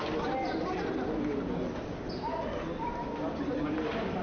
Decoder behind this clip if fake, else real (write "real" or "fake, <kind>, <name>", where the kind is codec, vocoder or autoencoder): real